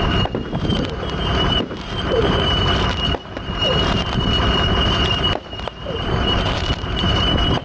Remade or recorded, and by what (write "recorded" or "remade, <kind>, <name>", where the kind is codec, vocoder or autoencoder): remade, vocoder, BigVGAN v2